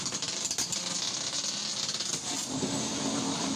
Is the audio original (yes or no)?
yes